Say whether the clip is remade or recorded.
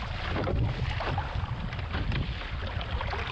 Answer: recorded